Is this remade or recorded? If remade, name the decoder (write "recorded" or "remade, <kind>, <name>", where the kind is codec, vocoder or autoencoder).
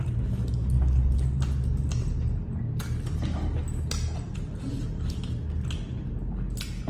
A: recorded